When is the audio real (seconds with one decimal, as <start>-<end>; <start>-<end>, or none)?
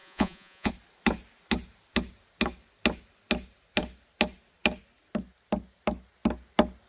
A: 0.7-6.9